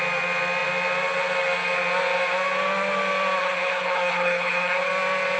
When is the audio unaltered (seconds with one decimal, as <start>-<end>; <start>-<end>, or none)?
0.0-3.4; 4.9-5.4